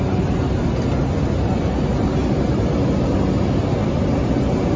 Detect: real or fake real